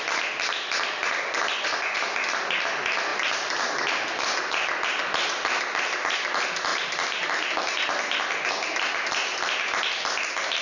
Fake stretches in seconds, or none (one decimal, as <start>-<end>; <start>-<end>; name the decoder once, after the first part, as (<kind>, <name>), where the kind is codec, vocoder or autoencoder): 1.5-2.0 (vocoder, Vocos)